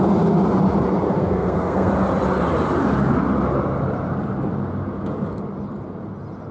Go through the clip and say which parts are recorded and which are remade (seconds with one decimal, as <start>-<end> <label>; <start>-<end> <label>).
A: 0.0-1.1 recorded; 1.1-1.9 remade; 1.9-6.5 recorded